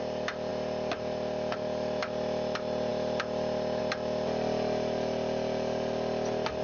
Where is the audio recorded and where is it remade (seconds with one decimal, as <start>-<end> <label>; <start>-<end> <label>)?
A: 0.0-6.6 recorded